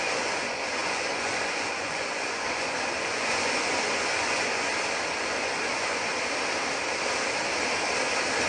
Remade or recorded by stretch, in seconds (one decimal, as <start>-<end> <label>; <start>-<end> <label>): 0.0-4.7 remade; 4.7-5.2 recorded; 5.2-6.1 remade; 6.1-8.5 recorded